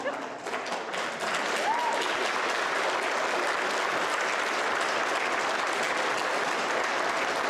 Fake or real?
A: real